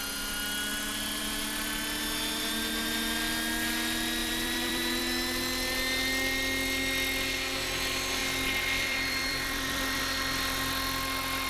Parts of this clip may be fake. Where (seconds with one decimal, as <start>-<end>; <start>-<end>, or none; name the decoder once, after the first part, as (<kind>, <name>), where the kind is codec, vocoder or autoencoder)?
4.2-5.0 (vocoder, BigVGAN v2); 8.2-10.0